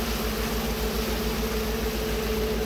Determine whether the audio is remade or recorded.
recorded